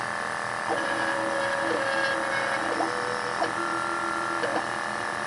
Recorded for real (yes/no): yes